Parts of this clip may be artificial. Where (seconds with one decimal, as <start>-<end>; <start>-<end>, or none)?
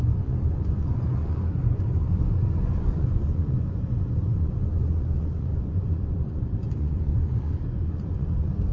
0.0-8.7